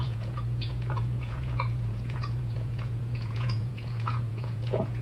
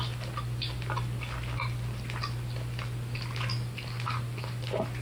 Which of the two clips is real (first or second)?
second